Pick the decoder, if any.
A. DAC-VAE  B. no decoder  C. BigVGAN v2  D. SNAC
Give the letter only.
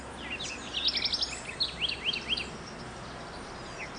B